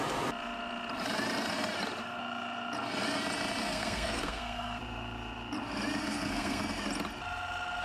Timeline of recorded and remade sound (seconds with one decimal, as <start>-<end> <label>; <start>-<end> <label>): 0.0-3.6 recorded; 3.6-4.8 remade; 4.8-6.0 recorded; 6.0-6.6 remade; 6.6-7.8 recorded